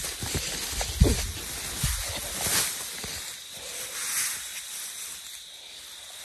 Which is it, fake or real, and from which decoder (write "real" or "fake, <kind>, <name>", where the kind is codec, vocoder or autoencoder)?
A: real